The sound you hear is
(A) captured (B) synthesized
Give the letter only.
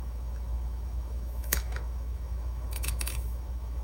B